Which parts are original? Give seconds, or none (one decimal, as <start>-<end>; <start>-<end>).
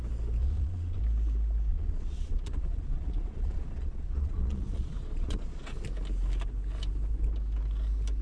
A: 0.0-0.4; 1.0-1.7; 5.7-8.2